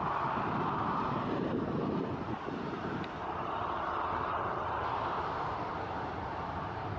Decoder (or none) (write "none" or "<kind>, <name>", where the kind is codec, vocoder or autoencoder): vocoder, BigVGAN v2